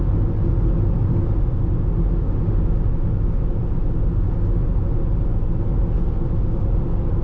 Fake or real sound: real